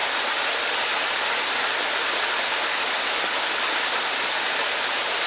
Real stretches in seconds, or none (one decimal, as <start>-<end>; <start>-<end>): 0.0-5.3